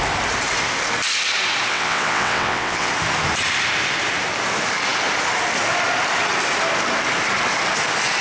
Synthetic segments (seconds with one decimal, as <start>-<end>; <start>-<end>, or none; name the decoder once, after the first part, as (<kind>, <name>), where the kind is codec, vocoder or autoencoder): 1.7-2.9 (vocoder, WaveNeXt)